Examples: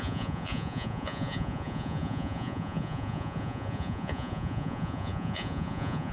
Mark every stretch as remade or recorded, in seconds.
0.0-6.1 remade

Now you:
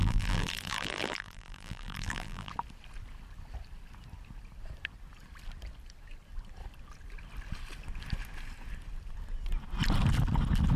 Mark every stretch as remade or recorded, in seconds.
0.0-2.5 remade; 2.5-10.8 recorded

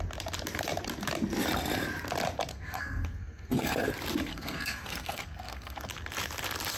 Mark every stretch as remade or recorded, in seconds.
0.0-2.5 recorded; 2.5-3.9 remade; 3.9-4.3 recorded; 4.3-5.9 remade; 5.9-6.8 recorded

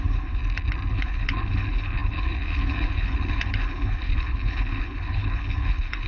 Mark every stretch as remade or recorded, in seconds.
0.0-0.4 remade; 0.4-0.9 recorded; 0.9-6.1 remade

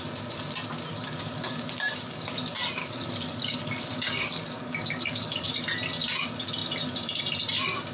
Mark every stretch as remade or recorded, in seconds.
0.0-0.9 recorded; 0.9-1.6 remade; 1.6-2.8 recorded; 2.8-5.5 remade; 5.5-7.9 recorded

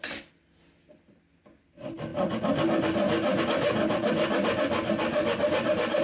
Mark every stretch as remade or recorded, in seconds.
0.0-6.0 recorded

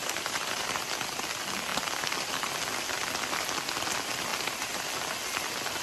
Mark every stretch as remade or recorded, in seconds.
0.0-0.8 remade; 0.8-4.3 recorded; 4.3-4.9 remade; 4.9-5.8 recorded